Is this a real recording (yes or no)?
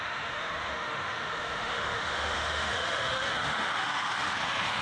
no